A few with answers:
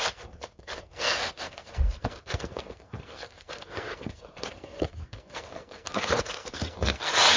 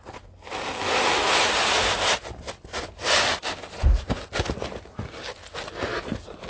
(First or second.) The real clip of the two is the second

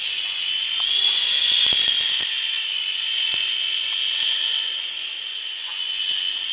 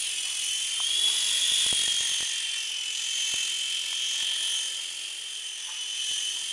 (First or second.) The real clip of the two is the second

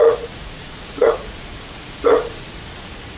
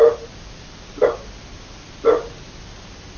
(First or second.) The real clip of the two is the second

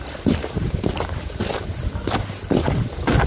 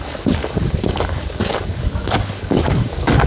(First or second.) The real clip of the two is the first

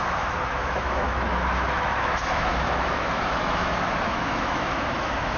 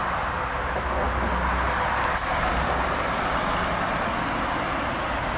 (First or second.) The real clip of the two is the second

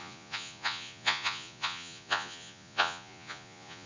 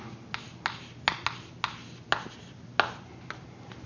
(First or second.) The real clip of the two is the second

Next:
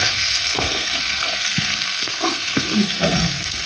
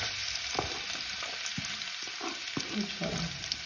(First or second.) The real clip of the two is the second